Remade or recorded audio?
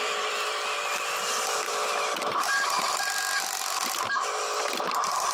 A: recorded